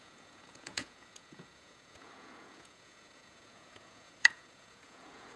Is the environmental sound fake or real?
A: fake